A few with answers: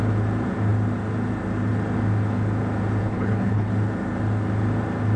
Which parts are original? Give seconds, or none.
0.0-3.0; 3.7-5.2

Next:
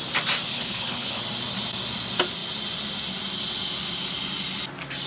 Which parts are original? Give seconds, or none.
0.0-0.5; 1.2-5.1